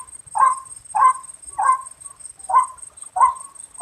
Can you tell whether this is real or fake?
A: real